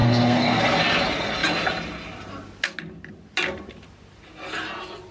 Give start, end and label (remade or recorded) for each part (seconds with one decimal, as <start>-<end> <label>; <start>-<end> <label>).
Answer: 0.0-0.6 remade; 0.6-5.1 recorded